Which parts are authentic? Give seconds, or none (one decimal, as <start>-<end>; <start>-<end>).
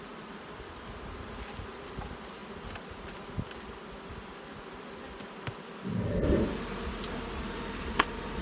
0.0-8.4